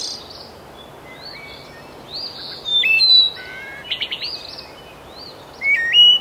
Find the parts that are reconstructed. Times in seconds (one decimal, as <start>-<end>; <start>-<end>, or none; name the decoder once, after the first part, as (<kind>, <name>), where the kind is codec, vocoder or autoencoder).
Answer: none